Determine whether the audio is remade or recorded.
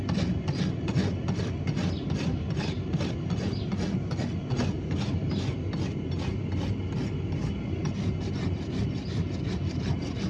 recorded